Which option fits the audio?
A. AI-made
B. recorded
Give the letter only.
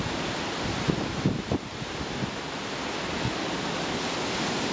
B